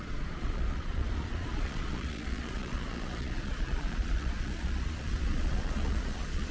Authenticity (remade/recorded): remade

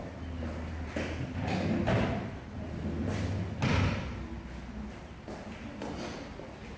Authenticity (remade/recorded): recorded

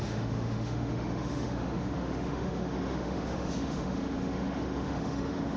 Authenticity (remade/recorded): remade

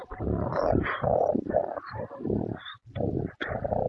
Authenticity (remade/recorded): recorded